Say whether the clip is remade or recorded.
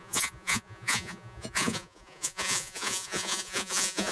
remade